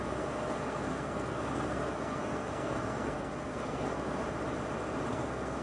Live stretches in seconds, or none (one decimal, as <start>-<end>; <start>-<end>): 4.2-5.1